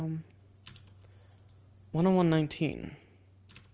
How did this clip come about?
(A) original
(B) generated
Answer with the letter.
A